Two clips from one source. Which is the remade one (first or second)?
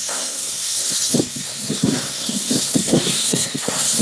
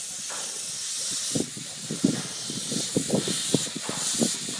first